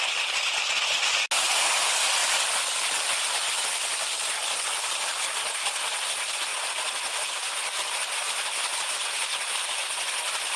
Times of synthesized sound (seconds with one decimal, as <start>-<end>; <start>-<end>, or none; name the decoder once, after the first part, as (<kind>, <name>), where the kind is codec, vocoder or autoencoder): 2.2-3.6 (vocoder, BigVGAN v2); 4.4-5.0; 6.5-7.2